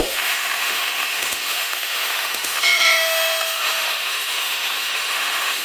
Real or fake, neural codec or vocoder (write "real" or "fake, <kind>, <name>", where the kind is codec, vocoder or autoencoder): fake, autoencoder, DAC-VAE